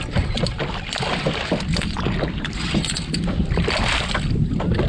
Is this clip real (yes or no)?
yes